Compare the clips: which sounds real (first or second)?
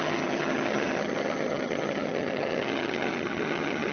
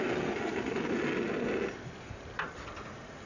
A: second